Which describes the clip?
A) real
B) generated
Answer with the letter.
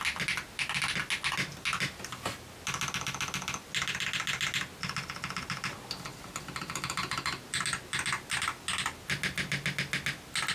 A